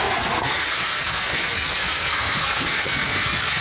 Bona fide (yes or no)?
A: no